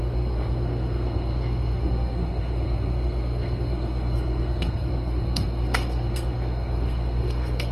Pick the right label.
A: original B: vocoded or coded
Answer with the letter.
B